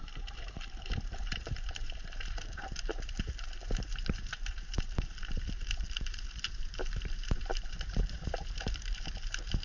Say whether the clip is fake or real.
fake